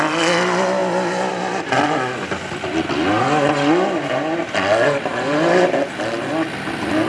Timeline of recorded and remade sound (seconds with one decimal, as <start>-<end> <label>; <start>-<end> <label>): 0.0-7.1 recorded